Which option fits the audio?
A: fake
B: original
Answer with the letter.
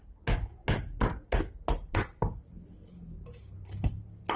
B